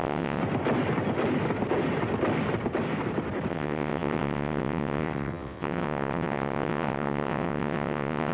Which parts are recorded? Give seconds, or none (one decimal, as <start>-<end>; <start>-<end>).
0.4-3.5